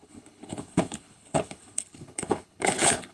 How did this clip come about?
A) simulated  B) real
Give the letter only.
A